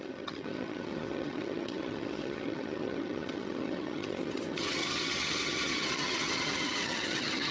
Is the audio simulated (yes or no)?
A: yes